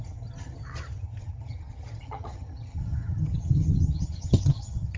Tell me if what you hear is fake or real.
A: fake